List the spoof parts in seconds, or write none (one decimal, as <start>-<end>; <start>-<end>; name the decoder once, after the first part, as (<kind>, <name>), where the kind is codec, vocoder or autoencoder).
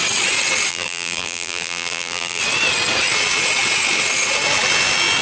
0.7-2.4 (vocoder, BigVGAN v2)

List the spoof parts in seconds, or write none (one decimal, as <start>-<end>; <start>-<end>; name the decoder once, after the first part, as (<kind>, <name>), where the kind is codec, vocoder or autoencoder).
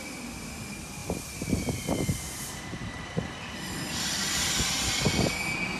1.0-4.5 (vocoder, BigVGAN v2)